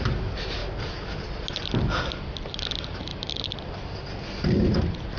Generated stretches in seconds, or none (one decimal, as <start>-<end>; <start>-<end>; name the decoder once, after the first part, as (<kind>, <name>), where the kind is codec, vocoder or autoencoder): none